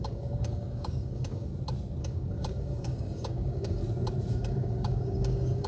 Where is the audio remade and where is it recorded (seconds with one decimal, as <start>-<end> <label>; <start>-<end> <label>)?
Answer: 0.0-1.5 remade; 1.5-2.0 recorded; 2.0-3.8 remade; 3.8-4.3 recorded; 4.3-5.7 remade